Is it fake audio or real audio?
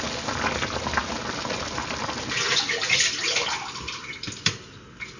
real